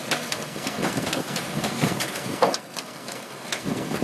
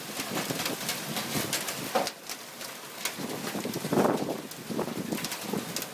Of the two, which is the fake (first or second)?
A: first